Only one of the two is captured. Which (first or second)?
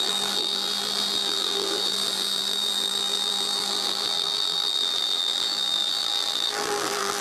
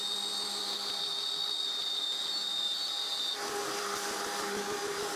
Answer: second